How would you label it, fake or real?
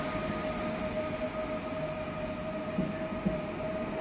real